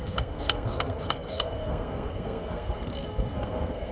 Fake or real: fake